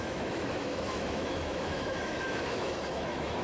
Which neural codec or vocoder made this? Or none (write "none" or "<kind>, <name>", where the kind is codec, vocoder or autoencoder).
autoencoder, DAC-VAE